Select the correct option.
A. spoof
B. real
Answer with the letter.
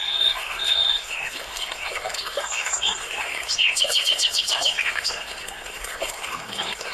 A